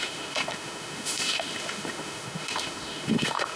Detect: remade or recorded remade